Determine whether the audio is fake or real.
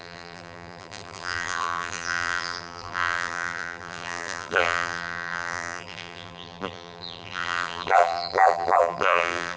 fake